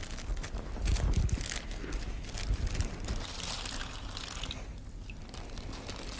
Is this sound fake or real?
real